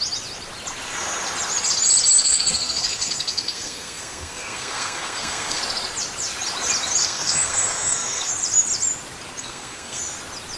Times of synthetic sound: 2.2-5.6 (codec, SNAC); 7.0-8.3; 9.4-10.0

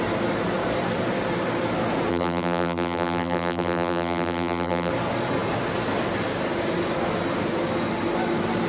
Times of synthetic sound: 2.1-4.9 (vocoder, BigVGAN v2)

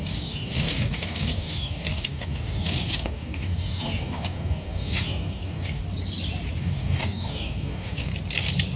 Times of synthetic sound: 0.0-5.8 (codec, DAC); 6.6-8.1